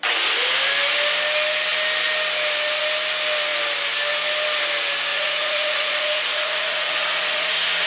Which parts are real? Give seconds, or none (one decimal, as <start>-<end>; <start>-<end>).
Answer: 0.0-5.1